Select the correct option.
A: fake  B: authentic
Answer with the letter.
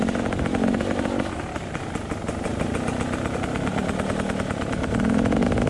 B